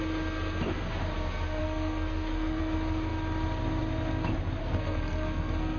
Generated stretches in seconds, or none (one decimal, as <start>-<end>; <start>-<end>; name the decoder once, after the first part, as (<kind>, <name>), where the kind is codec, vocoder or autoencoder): 1.6-2.6 (codec, SNAC); 4.6-5.8